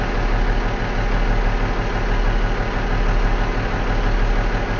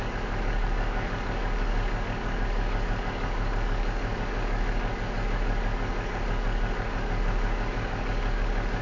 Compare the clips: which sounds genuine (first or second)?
first